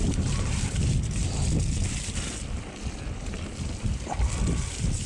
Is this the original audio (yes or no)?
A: no